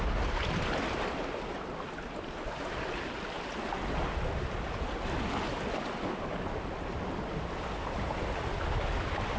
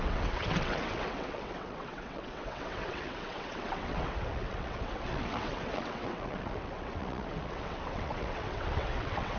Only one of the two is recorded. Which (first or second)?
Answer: first